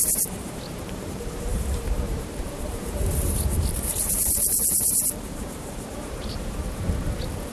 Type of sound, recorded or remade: remade